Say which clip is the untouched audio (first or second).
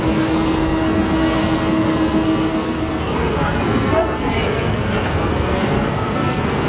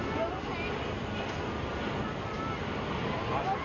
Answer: second